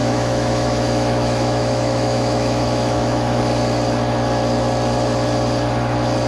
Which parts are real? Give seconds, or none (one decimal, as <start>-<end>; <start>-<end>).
3.4-6.3